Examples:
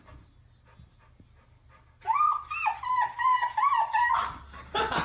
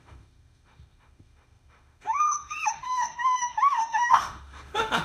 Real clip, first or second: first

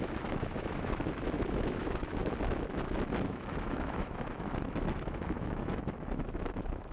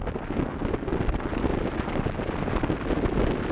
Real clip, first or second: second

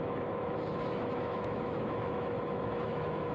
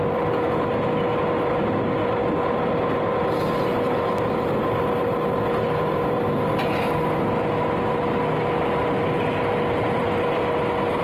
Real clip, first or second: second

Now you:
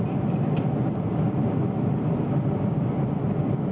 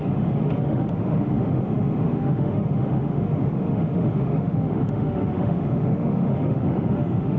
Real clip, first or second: first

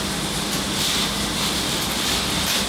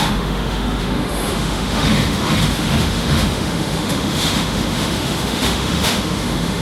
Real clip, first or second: first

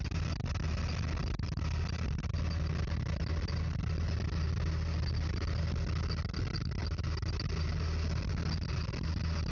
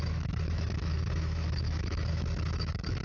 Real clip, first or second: first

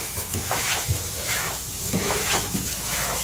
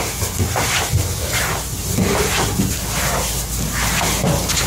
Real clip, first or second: second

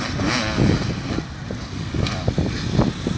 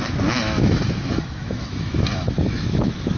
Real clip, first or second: first